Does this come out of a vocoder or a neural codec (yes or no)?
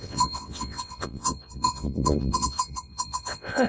yes